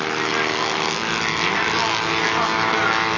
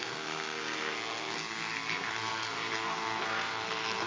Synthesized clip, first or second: second